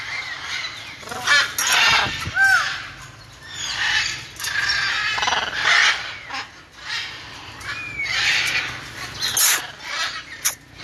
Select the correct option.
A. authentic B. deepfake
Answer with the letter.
A